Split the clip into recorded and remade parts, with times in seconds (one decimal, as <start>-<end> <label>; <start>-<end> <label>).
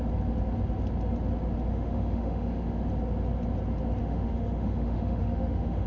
0.0-1.7 recorded; 1.7-2.8 remade; 2.8-4.0 recorded; 4.0-5.9 remade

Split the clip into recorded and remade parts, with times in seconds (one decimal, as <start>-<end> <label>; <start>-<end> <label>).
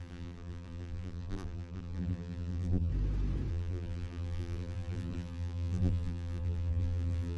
0.0-2.9 remade; 2.9-3.5 recorded; 3.5-7.4 remade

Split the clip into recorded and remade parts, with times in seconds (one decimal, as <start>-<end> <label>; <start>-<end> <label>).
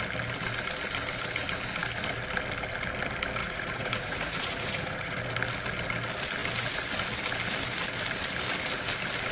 0.0-3.4 recorded; 3.4-5.2 remade; 5.2-9.3 recorded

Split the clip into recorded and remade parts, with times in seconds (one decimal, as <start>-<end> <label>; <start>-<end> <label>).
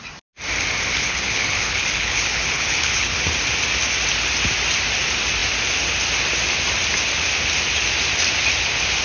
0.0-0.9 recorded; 0.9-3.2 remade; 3.2-9.0 recorded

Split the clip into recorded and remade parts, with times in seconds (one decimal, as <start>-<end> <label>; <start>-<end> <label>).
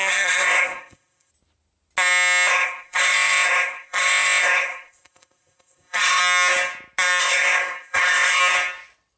0.0-1.3 remade; 1.3-2.5 recorded; 2.5-6.2 remade; 6.2-7.2 recorded; 7.2-8.4 remade; 8.4-9.2 recorded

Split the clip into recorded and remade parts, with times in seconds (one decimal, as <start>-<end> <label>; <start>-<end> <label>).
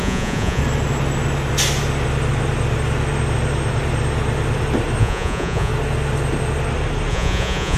0.0-0.6 remade; 0.6-5.0 recorded; 5.0-5.7 remade; 5.7-7.1 recorded; 7.1-7.8 remade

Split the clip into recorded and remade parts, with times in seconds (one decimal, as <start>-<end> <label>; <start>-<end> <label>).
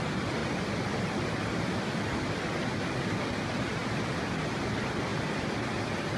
0.0-6.2 recorded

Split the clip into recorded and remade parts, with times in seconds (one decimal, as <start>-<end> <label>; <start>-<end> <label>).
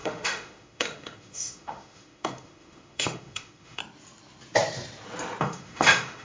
0.0-3.8 remade; 3.8-5.4 recorded; 5.4-6.2 remade